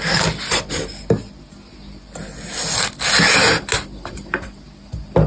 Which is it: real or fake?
real